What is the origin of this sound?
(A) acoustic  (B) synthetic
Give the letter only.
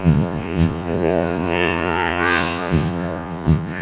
B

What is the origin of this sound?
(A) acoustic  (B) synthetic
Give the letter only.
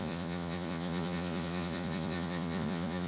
B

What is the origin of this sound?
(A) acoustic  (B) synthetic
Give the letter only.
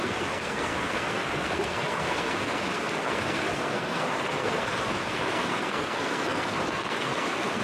B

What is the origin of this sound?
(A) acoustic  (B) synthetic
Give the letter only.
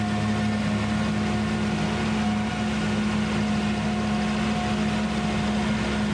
A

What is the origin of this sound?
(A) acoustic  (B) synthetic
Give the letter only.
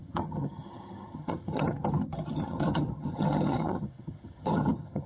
B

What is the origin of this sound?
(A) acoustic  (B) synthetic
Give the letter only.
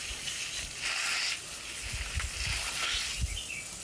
A